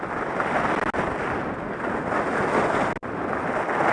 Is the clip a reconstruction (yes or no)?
no